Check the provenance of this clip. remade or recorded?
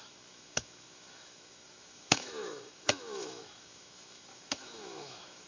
remade